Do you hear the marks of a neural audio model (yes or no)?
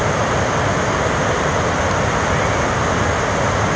no